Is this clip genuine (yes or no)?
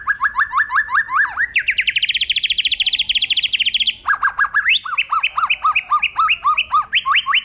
yes